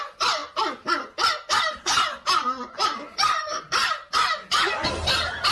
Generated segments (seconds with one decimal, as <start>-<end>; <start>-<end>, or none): none